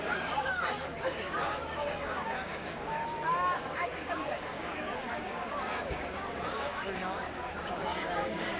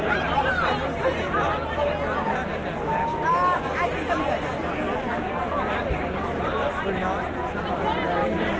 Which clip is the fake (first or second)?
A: first